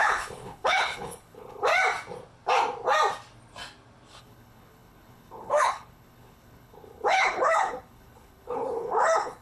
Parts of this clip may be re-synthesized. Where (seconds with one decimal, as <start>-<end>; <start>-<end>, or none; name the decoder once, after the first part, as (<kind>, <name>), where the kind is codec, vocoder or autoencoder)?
0.0-1.7 (codec, HILCodec); 4.2-9.4